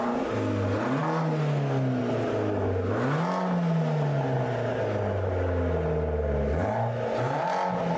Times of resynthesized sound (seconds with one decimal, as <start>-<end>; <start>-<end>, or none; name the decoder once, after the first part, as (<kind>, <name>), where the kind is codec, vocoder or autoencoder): none